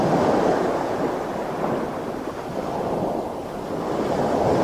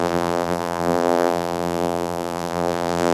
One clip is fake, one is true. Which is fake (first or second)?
second